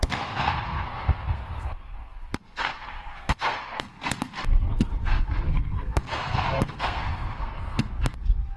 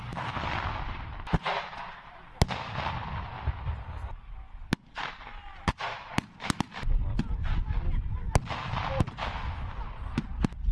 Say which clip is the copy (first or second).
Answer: first